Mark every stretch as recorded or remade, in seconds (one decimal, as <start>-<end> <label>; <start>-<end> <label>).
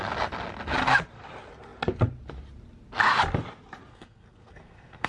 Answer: 0.0-3.9 recorded; 3.9-5.1 remade